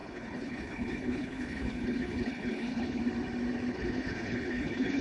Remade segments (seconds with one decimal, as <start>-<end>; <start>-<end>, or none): 0.0-3.0; 3.7-5.0